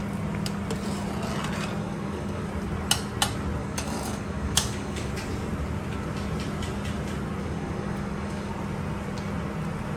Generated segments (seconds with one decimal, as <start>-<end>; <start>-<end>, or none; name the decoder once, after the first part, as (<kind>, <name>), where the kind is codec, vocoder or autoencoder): 1.8-2.5 (codec, DAC); 3.6-5.1; 7.4-8.5